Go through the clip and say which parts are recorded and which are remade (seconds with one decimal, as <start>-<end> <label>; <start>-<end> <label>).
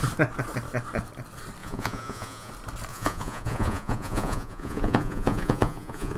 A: 0.0-1.6 recorded; 1.6-2.5 remade; 2.5-2.9 recorded; 2.9-6.2 remade